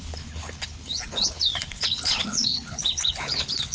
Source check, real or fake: fake